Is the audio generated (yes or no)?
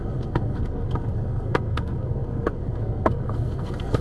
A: yes